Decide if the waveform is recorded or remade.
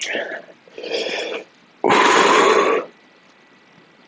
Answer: recorded